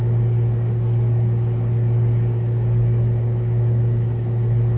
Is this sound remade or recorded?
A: recorded